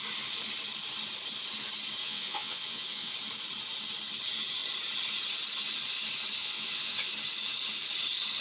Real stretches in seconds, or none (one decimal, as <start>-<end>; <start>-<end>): 0.0-2.0; 3.1-6.4; 7.1-8.4